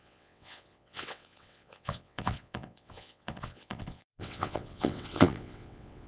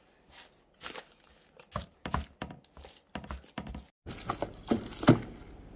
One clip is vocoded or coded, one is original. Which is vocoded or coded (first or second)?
first